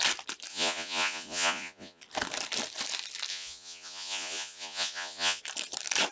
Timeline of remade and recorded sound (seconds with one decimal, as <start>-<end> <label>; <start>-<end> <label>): 0.0-0.5 recorded; 0.5-2.0 remade; 2.0-3.3 recorded; 3.3-5.4 remade; 5.4-6.1 recorded